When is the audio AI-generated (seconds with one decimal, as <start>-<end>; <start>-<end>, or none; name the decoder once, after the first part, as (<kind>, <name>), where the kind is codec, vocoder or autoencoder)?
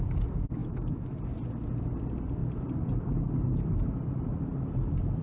0.6-1.2 (autoencoder, DAC-VAE)